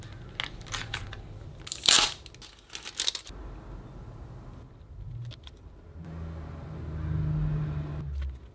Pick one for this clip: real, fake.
real